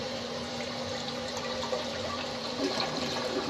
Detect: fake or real fake